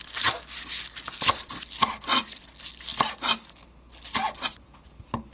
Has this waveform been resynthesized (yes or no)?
no